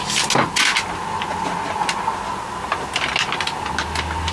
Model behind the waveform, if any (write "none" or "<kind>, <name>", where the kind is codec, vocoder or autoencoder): none